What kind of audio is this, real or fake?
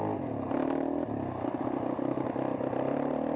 real